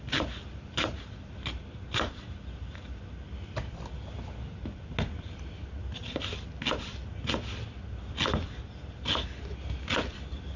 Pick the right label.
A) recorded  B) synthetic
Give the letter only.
A